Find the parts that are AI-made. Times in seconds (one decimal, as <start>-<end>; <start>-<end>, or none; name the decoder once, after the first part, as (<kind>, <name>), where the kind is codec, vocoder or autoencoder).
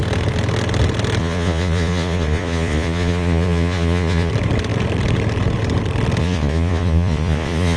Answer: 1.2-4.3 (vocoder, Vocos); 6.2-7.8